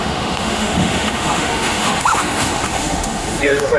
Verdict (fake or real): fake